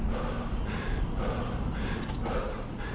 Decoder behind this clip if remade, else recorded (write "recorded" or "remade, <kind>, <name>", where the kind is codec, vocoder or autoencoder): recorded